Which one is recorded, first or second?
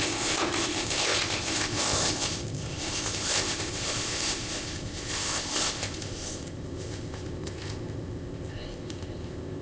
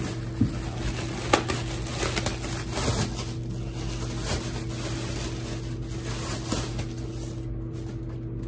second